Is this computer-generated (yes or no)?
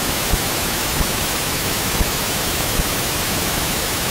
yes